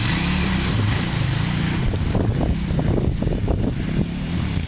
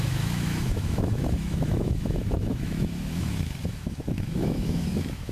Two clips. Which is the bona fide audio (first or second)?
first